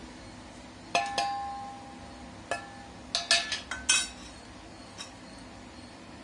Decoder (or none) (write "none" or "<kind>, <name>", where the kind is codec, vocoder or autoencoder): none